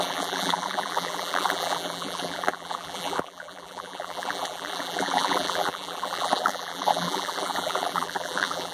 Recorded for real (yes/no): no